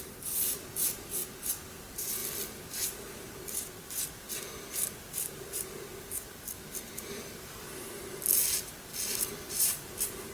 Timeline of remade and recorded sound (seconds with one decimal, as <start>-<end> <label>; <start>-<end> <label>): 0.0-1.2 remade; 1.2-1.7 recorded; 1.7-10.3 remade